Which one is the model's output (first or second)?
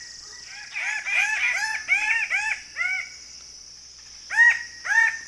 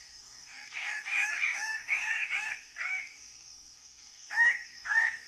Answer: second